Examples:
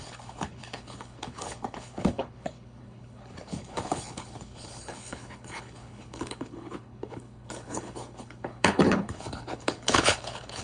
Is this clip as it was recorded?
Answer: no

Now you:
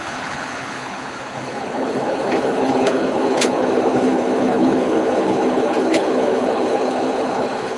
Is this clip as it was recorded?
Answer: no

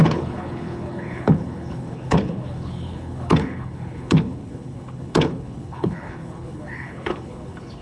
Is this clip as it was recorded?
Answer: no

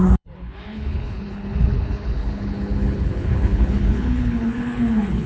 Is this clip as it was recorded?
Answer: no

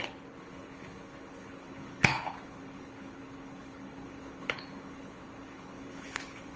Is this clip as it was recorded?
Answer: no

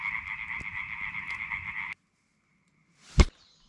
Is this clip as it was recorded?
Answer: yes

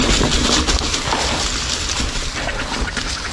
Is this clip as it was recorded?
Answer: yes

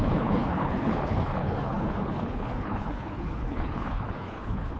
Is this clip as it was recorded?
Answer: no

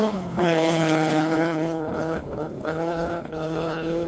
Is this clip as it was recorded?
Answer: no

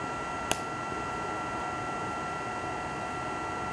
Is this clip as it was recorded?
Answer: yes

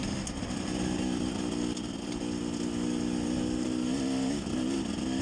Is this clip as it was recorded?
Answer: yes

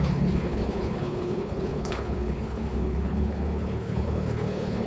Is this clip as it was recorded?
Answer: no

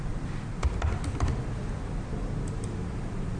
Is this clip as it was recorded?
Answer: yes